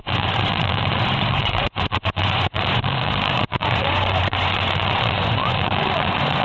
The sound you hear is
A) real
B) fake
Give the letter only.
B